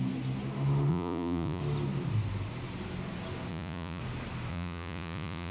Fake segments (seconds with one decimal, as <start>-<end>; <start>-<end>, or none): 0.9-1.6; 3.5-4.0; 4.5-5.5